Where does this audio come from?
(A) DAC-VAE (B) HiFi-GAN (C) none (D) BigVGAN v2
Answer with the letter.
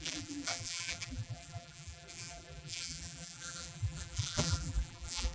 D